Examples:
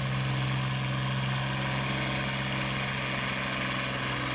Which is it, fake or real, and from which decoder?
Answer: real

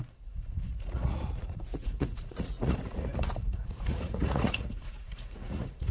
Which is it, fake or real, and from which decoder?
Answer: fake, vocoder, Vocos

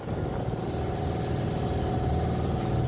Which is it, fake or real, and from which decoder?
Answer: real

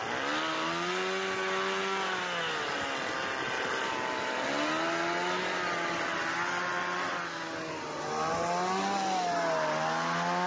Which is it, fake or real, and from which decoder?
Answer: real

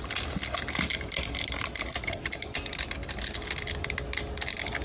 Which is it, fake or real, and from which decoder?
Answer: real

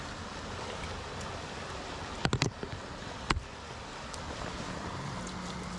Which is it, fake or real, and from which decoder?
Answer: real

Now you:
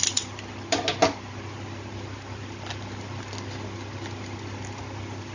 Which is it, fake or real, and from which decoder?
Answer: real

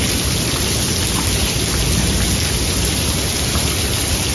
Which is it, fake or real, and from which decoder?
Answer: real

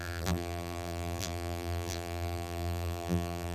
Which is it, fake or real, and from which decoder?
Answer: fake, vocoder, BigVGAN v2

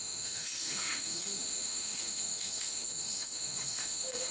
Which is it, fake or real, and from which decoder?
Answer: fake, autoencoder, DAC-VAE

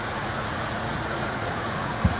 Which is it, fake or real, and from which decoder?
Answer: fake, vocoder, Vocos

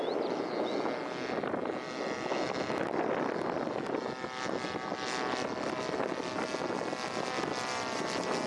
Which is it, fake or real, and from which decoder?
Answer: real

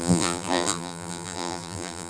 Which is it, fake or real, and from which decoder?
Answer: fake, vocoder, BigVGAN v2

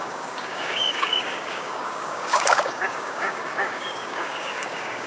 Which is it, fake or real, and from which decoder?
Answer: fake, codec, DAC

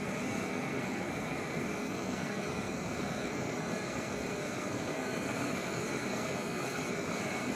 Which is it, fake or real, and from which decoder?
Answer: fake, codec, SNAC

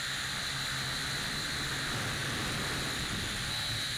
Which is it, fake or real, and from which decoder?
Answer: real